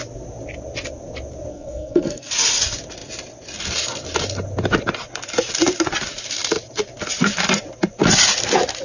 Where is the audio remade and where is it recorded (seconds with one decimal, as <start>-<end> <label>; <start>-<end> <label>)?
0.0-1.5 recorded; 1.5-2.3 remade; 2.3-8.8 recorded